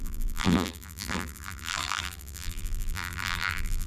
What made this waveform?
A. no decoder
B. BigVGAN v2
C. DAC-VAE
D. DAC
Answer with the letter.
B